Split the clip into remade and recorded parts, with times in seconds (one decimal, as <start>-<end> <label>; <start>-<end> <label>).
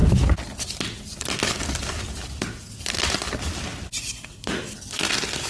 0.0-3.3 remade; 3.3-3.7 recorded; 3.7-4.9 remade; 4.9-5.5 recorded